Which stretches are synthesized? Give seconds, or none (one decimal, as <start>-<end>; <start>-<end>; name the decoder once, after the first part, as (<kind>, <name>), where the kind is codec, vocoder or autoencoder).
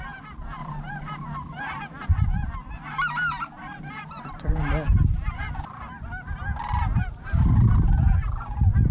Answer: 0.6-2.1 (vocoder, BigVGAN v2); 2.6-5.6